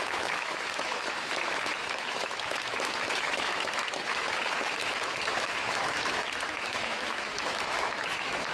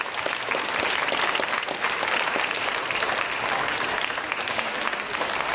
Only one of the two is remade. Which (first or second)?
first